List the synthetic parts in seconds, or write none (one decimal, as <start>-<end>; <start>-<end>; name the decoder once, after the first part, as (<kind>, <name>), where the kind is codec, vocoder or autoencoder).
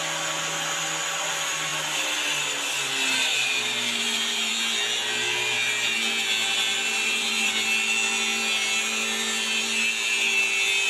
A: 3.3-4.5 (vocoder, BigVGAN v2); 6.7-7.5